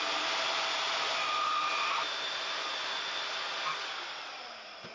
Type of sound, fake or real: real